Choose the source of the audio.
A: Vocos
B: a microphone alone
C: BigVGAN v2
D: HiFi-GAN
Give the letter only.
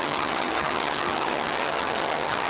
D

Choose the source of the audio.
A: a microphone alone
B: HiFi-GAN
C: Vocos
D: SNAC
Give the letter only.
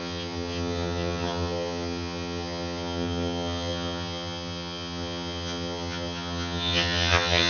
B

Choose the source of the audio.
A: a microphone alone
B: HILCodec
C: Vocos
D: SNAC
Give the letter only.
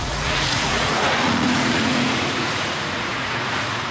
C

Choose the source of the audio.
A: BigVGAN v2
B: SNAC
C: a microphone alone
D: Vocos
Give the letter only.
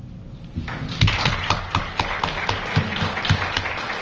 C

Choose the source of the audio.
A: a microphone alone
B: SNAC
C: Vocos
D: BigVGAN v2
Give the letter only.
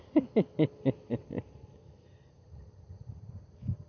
A